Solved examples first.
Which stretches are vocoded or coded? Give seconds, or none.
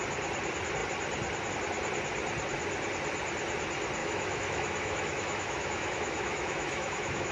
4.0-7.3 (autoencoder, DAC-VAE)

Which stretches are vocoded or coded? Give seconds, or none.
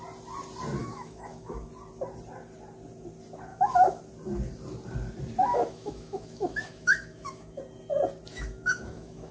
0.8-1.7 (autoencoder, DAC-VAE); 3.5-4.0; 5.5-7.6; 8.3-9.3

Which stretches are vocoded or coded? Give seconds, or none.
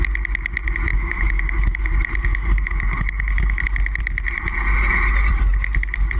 0.9-1.8 (autoencoder, DAC-VAE); 2.3-3.6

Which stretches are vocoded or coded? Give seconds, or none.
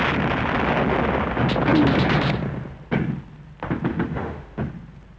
3.9-4.6 (autoencoder, DAC-VAE)